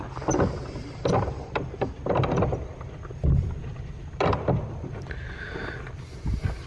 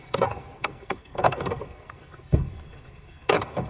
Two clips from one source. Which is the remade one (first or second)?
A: second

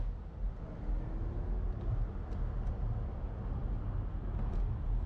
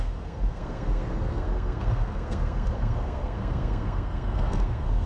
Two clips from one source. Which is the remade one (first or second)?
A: second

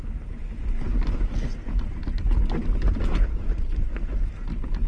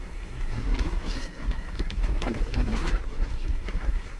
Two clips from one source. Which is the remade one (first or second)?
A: second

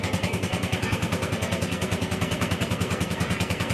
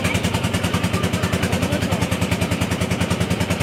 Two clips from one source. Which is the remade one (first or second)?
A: first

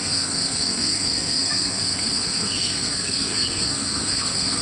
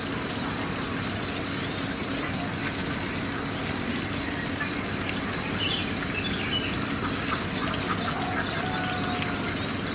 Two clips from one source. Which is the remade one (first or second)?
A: first